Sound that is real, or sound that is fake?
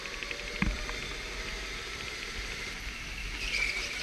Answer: real